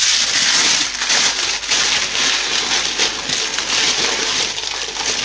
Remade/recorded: recorded